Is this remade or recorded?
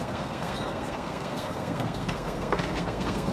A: remade